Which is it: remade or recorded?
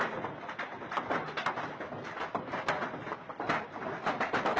recorded